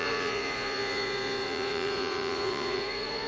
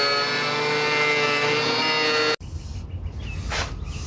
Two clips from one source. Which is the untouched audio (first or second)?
second